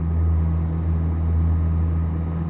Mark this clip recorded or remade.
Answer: recorded